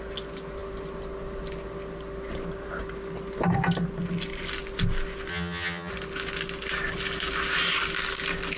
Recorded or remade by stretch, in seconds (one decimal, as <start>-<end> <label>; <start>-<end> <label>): 0.0-5.3 recorded; 5.3-5.9 remade; 5.9-8.6 recorded